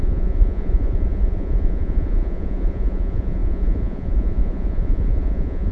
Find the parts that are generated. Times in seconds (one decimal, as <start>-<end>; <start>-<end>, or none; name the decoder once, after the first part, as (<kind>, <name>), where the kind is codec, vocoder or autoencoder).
0.0-5.7 (vocoder, Vocos)